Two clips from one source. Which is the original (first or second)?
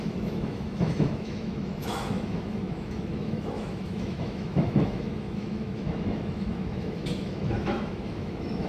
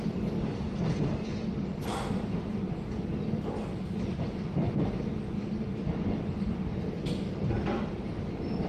second